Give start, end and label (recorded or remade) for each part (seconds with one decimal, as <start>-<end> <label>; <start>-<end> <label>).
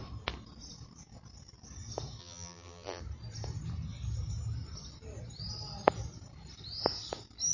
0.0-2.2 recorded; 2.2-3.0 remade; 3.0-7.5 recorded